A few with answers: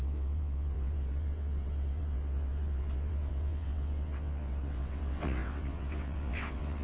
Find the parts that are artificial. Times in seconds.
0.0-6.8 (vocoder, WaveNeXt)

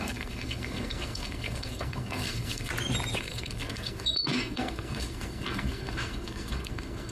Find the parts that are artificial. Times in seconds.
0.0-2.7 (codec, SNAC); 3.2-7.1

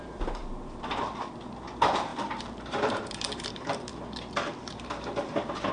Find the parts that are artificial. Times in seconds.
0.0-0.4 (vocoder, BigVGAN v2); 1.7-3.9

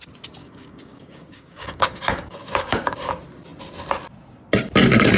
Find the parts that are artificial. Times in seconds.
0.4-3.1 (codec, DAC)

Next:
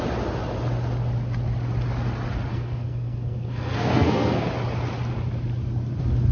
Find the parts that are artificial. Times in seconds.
2.5-4.5 (codec, SNAC)